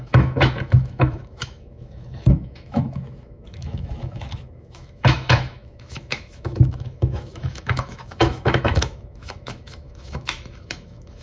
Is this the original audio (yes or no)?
no